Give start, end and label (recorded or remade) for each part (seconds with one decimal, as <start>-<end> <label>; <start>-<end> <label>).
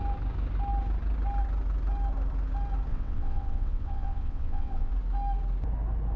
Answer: 0.0-2.9 recorded; 2.9-4.9 remade; 4.9-6.2 recorded